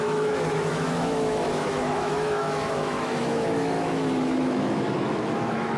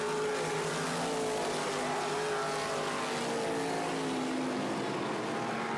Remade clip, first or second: first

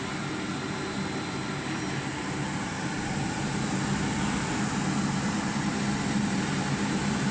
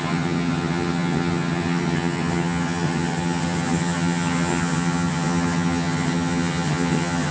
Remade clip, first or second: second